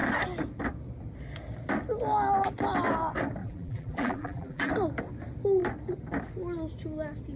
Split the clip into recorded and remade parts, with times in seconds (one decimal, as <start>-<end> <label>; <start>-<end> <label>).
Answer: 0.0-3.4 recorded; 3.4-4.7 remade; 4.7-7.4 recorded